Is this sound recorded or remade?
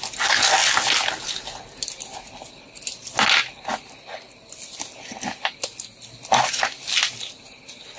recorded